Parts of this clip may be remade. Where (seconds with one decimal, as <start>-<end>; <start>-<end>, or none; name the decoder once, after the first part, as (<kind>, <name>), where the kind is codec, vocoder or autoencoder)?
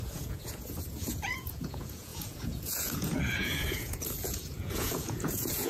0.0-5.7 (vocoder, Vocos)